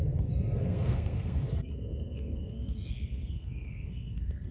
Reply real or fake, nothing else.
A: fake